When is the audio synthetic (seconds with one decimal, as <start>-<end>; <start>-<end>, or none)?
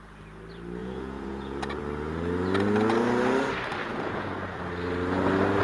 0.8-1.8; 3.8-4.6